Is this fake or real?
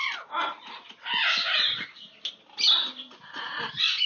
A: real